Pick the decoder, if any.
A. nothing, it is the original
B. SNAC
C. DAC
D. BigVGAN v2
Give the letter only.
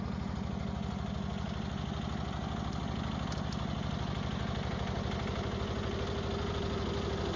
A